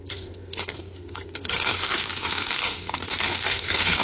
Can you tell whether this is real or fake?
fake